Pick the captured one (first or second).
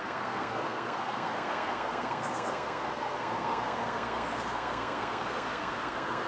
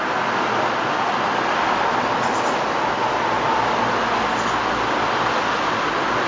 second